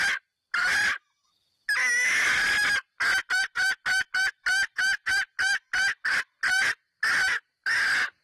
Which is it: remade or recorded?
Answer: recorded